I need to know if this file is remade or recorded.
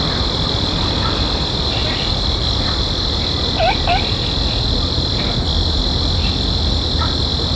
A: recorded